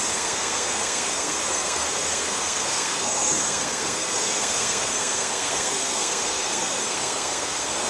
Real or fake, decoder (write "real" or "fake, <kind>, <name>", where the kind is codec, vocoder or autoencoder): fake, codec, SNAC